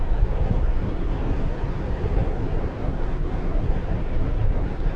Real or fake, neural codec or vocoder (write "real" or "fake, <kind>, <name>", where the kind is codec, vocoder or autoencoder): fake, codec, SNAC